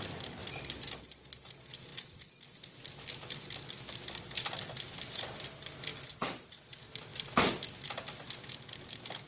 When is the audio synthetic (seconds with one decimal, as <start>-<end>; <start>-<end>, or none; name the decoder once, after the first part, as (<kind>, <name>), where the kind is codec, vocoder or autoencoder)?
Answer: none